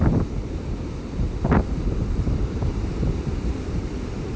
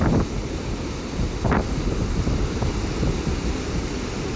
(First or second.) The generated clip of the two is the first